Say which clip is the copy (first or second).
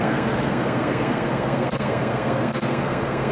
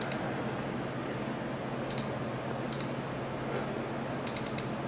first